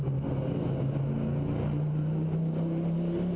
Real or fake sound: real